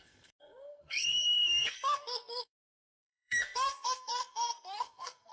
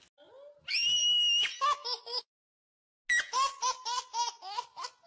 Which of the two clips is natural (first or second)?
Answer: second